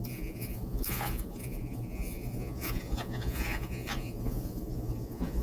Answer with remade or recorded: remade